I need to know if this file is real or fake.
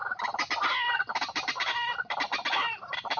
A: real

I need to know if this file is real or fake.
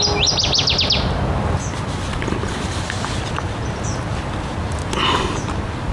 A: real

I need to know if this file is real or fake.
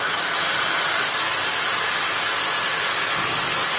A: real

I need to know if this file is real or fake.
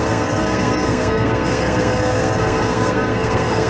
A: fake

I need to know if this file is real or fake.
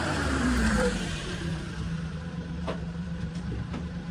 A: fake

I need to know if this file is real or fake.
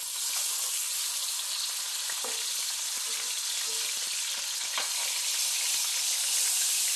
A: real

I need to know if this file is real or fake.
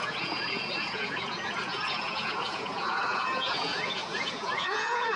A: fake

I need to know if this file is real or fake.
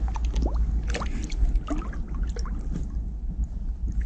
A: real